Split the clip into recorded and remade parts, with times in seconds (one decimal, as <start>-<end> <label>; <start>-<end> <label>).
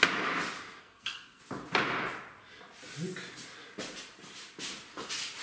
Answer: 0.0-0.8 recorded; 0.8-1.4 remade; 1.4-5.4 recorded